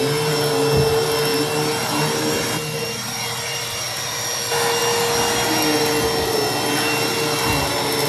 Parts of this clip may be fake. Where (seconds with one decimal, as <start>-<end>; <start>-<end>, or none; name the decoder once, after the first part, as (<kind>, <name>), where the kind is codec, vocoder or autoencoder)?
none